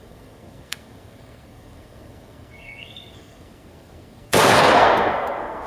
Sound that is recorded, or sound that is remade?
remade